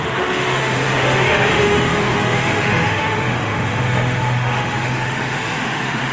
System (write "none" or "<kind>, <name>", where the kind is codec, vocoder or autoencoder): autoencoder, DAC-VAE